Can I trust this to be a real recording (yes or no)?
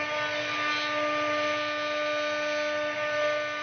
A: yes